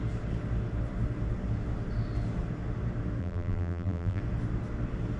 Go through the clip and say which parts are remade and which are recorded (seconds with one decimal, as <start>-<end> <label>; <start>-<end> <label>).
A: 0.0-3.2 recorded; 3.2-4.2 remade; 4.2-5.2 recorded